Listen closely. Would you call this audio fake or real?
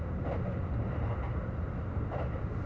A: real